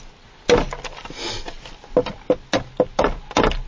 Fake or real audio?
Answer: real